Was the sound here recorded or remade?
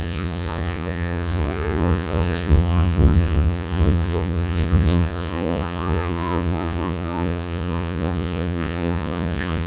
remade